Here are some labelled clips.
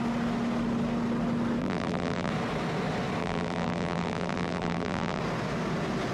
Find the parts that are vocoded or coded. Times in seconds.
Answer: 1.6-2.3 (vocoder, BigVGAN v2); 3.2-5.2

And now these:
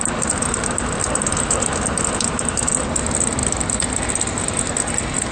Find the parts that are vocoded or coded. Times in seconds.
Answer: none

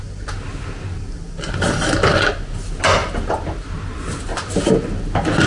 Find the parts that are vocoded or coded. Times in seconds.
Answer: none

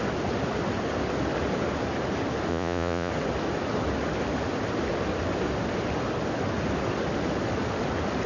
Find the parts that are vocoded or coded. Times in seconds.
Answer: 2.5-3.1 (vocoder, Vocos)

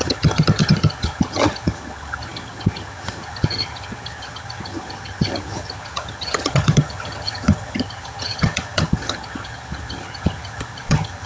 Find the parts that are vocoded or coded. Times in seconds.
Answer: 0.0-11.3 (vocoder, HiFi-GAN)

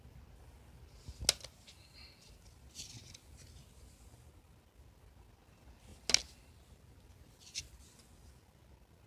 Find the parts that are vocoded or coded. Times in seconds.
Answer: none

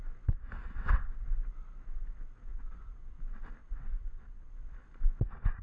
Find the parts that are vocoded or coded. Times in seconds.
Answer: 0.6-1.1 (vocoder, WaveNeXt); 2.5-3.2; 3.6-4.5

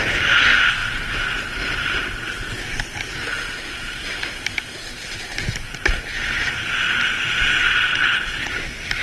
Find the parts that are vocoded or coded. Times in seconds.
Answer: 7.9-8.5 (codec, HILCodec)